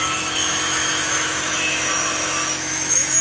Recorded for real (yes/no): no